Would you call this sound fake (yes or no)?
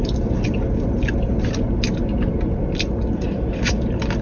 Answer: no